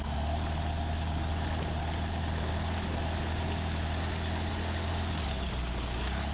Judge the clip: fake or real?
real